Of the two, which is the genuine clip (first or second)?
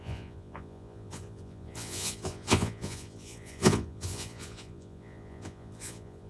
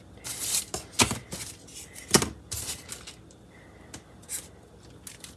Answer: second